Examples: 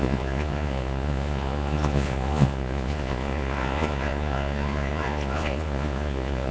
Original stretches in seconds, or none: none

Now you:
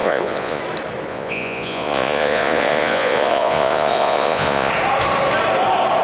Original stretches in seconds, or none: 0.6-1.1; 4.7-6.0

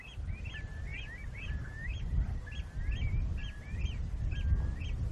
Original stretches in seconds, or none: 0.0-5.1

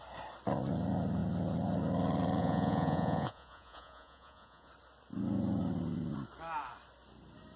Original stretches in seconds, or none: 0.0-2.4; 4.7-7.6